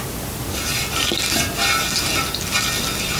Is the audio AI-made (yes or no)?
no